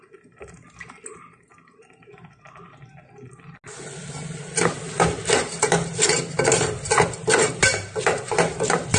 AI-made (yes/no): no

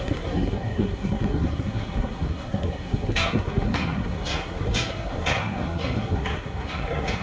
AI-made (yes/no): yes